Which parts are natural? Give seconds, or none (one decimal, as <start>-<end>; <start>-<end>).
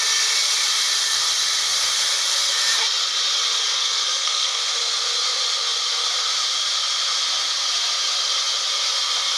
0.0-3.8; 4.6-9.4